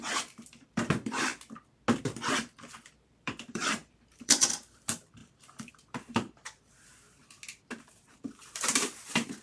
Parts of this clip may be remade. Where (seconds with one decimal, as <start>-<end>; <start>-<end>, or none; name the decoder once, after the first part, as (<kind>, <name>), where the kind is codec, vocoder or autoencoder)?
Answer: 0.0-1.3 (vocoder, BigVGAN v2); 2.0-7.2; 7.9-9.4